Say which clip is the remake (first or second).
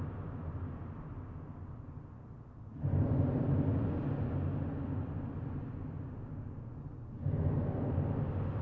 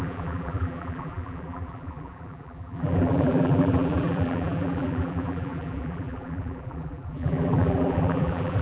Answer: second